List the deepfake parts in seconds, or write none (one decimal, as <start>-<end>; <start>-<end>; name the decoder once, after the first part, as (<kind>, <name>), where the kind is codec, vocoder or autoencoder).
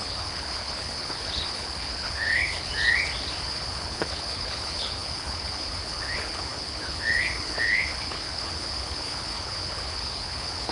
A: 0.0-2.7 (codec, HILCodec); 3.4-10.7